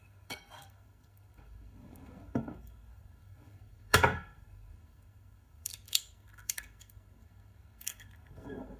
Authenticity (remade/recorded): remade